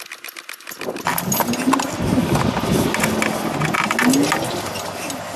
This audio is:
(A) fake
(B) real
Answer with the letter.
B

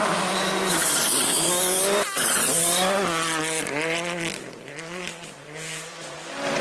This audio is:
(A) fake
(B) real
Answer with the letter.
B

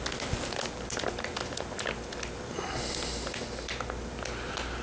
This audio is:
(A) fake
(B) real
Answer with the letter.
B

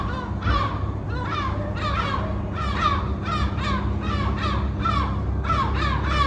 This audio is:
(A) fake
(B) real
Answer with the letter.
B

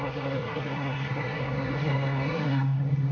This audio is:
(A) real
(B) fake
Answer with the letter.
B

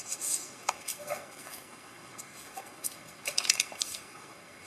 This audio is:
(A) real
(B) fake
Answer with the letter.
B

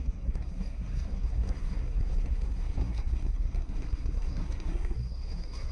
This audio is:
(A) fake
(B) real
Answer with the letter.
A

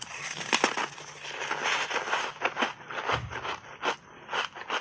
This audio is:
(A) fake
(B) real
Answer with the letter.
B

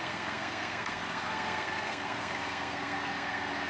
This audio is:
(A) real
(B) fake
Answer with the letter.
B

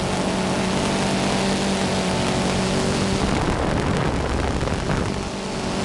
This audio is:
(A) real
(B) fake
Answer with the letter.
A